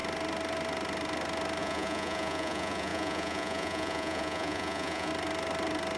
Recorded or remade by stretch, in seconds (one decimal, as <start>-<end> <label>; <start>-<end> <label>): 0.0-1.6 recorded; 1.6-5.1 remade; 5.1-6.0 recorded